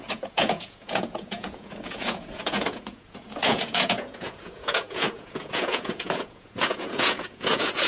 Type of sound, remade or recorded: remade